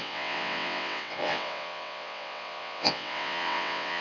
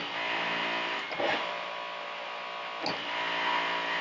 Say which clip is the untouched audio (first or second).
second